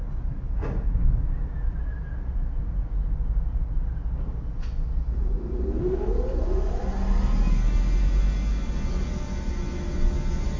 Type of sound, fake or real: real